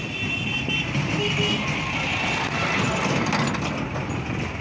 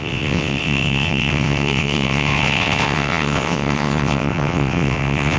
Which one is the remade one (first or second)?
second